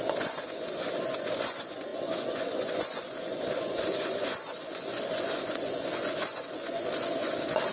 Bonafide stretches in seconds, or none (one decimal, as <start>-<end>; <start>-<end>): none